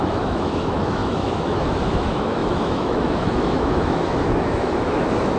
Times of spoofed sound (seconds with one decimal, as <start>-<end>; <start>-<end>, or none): 0.0-5.4